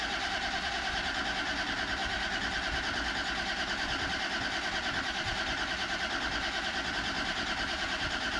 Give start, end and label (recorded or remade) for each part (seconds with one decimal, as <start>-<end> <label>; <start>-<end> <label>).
0.0-2.0 remade; 2.0-6.9 recorded; 6.9-8.4 remade